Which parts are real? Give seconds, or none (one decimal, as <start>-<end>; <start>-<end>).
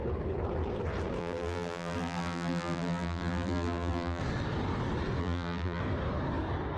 0.0-1.2; 4.2-5.2; 5.8-6.8